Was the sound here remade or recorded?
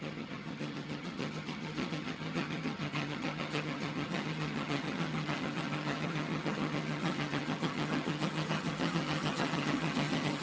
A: remade